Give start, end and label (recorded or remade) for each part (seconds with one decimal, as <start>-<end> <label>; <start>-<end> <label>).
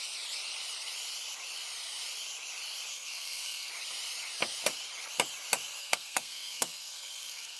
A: 0.0-2.9 recorded; 2.9-3.7 remade; 3.7-5.8 recorded; 5.8-7.6 remade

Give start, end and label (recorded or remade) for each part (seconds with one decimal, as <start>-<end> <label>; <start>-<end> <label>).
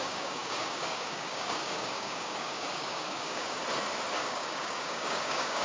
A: 0.0-3.6 remade; 3.6-4.2 recorded; 4.2-5.6 remade